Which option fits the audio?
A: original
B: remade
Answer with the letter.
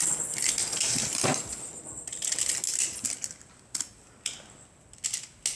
A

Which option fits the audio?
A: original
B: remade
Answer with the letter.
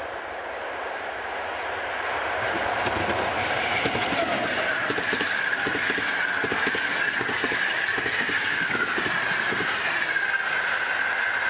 A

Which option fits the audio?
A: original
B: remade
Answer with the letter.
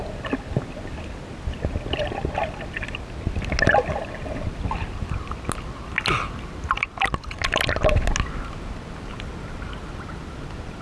A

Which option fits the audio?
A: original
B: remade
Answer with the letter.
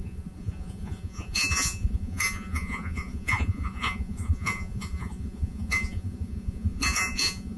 B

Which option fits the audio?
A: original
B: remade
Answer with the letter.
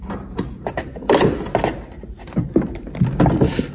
A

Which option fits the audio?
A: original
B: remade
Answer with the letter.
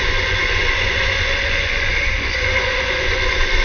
B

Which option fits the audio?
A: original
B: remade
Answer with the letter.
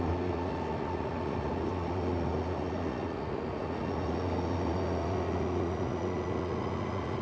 B